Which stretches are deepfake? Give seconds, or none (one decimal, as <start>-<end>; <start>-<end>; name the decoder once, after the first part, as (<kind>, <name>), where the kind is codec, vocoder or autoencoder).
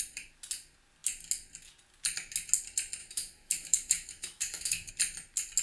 3.0-4.9 (autoencoder, DAC-VAE)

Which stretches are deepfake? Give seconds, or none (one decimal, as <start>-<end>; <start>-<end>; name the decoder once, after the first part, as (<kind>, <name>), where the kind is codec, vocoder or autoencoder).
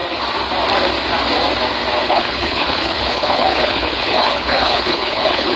2.0-5.6 (codec, HILCodec)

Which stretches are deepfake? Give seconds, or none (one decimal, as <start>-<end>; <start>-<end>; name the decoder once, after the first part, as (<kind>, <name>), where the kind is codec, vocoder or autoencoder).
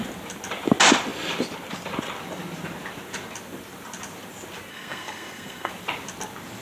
4.7-5.7 (codec, SNAC)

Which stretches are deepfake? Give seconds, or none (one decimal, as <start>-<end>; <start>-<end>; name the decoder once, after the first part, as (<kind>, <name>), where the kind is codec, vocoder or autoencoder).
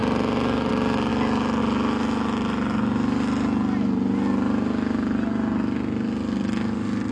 none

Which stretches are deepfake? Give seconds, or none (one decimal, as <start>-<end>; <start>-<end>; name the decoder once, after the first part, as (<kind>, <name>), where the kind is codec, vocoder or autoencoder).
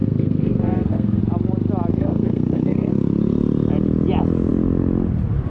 0.0-1.2 (codec, SNAC); 1.9-2.9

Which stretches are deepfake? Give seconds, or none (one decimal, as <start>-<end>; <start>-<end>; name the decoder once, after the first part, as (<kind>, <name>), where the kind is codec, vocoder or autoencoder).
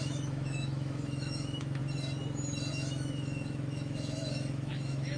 0.0-1.8 (autoencoder, DAC-VAE); 2.7-5.2